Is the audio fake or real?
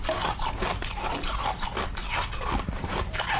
real